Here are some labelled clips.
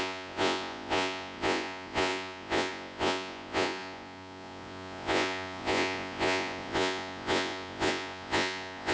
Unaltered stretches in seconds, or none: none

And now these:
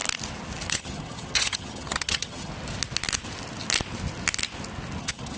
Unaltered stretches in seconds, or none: 0.0-0.7; 2.5-5.0

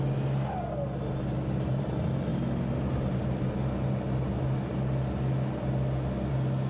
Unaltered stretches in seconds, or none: 0.0-6.7

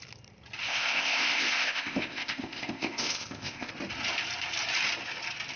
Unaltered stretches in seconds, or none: 0.0-0.6; 3.7-5.6

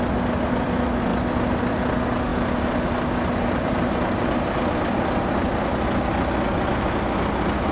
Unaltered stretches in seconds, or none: 0.0-7.7

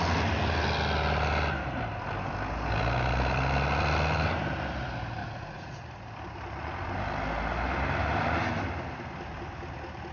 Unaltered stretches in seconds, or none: 0.0-5.2; 6.0-10.1

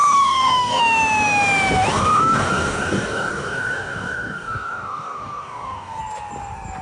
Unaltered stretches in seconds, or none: 0.8-1.9; 6.0-6.8

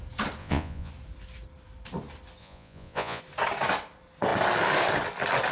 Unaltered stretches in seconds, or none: 0.0-0.4; 0.9-2.4; 3.2-5.5